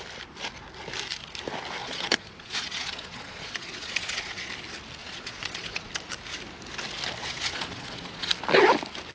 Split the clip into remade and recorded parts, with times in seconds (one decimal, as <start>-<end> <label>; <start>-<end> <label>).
0.0-1.8 recorded; 1.8-4.5 remade; 4.5-5.0 recorded; 5.0-5.9 remade; 5.9-7.2 recorded; 7.2-8.3 remade; 8.3-9.1 recorded